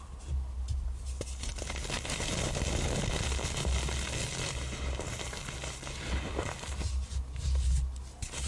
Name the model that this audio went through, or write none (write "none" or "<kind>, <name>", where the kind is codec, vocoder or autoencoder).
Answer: none